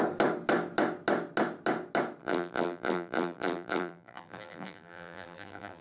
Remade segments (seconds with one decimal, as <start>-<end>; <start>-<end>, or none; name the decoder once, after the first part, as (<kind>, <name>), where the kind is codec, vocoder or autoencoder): 2.2-5.8 (vocoder, BigVGAN v2)